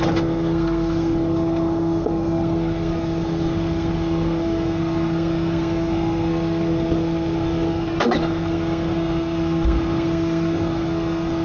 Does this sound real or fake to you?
fake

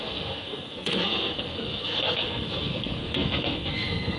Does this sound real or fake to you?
fake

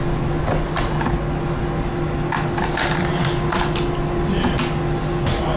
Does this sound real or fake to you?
real